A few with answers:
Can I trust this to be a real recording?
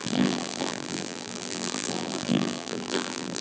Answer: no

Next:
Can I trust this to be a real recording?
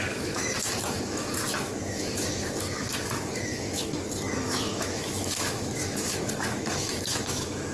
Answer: no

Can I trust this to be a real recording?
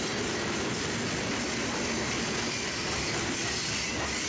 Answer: yes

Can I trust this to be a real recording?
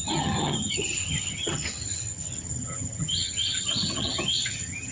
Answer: no